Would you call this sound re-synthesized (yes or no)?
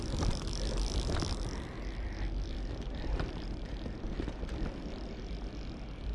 yes